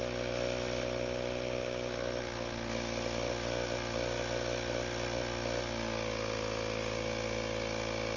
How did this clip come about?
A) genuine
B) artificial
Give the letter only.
A